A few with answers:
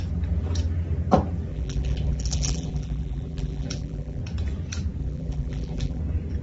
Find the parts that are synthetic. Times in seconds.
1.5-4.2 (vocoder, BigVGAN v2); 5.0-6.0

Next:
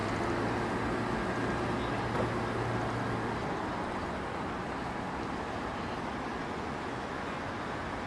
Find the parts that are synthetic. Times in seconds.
6.4-7.5 (vocoder, Vocos)

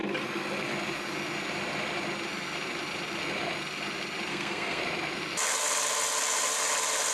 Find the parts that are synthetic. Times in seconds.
4.3-4.8 (codec, SNAC)

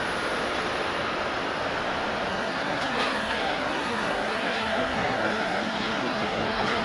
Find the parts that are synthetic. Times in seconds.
2.3-6.8 (codec, SNAC)

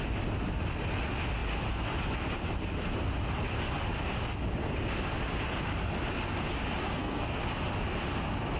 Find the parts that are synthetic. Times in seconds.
6.8-7.4 (codec, SNAC)

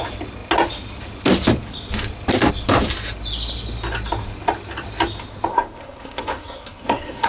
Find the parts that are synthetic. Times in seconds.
5.5-7.3 (codec, SNAC)

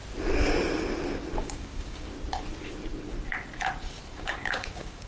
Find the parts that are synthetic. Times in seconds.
1.4-2.1 (codec, DAC); 4.1-5.1

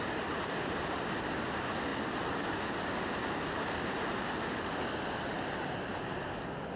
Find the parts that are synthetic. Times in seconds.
none